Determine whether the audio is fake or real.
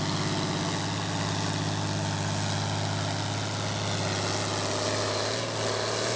real